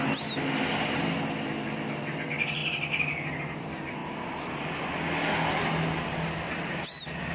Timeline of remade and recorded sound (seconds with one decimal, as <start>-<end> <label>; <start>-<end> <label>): 0.0-7.3 recorded